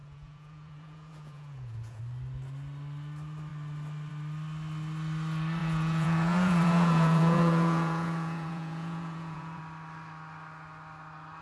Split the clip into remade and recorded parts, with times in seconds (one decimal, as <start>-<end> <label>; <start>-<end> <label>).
0.0-2.0 remade; 2.0-5.6 recorded; 5.6-9.6 remade; 9.6-11.4 recorded